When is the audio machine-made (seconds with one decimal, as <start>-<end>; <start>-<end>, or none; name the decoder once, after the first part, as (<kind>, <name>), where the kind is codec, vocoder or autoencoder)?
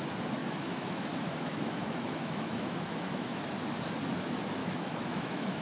0.4-3.4 (autoencoder, DAC-VAE); 4.6-5.6